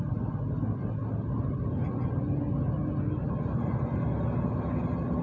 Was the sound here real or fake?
real